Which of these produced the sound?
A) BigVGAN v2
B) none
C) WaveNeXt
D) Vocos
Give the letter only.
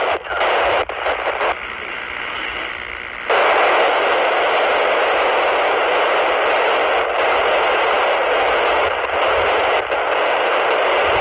B